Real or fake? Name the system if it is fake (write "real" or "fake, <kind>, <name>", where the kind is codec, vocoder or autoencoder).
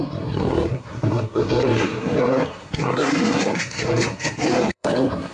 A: fake, codec, SNAC